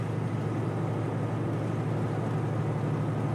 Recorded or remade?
recorded